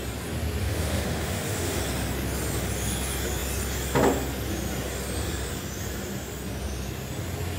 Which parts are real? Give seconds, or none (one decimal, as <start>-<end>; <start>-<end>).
0.0-0.6; 1.8-7.6